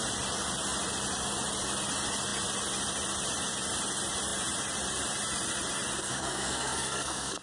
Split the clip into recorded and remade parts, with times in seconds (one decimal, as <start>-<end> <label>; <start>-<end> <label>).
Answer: 0.0-6.0 recorded; 6.0-7.4 remade